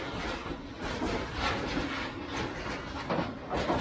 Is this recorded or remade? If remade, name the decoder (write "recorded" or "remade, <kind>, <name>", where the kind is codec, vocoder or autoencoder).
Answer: recorded